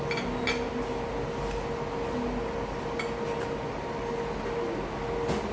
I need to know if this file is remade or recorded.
recorded